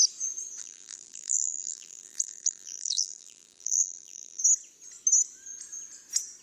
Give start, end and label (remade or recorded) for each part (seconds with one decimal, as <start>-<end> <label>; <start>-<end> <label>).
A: 0.0-0.6 recorded; 0.6-4.4 remade; 4.4-6.4 recorded